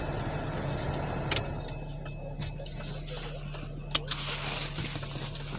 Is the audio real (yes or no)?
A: yes